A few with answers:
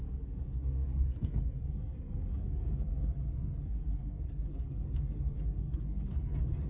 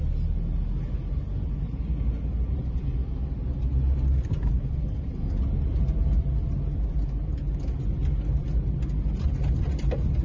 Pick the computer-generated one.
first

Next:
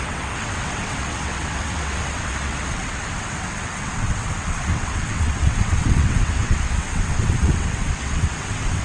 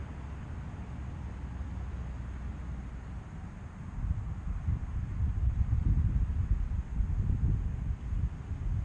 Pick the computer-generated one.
first